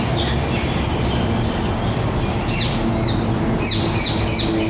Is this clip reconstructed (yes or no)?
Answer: no